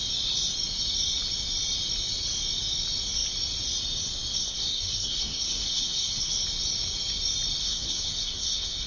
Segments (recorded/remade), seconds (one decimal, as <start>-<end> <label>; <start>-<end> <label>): 0.0-4.4 recorded; 4.4-6.3 remade; 6.3-7.6 recorded; 7.6-8.9 remade